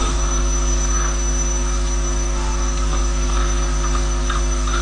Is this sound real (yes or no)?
no